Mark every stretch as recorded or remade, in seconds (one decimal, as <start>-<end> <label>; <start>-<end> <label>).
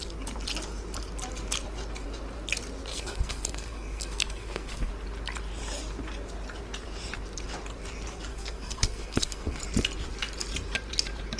0.0-2.9 recorded; 2.9-4.9 remade; 4.9-8.3 recorded; 8.3-9.6 remade; 9.6-11.4 recorded